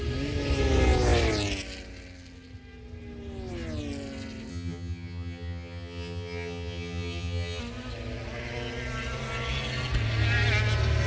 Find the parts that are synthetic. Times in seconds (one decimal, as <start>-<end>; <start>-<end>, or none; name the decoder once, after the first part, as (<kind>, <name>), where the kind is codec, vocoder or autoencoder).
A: 4.5-7.6 (vocoder, HiFi-GAN)